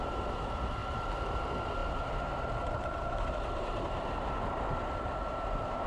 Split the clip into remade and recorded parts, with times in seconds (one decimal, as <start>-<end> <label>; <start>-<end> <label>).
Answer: 0.0-5.9 remade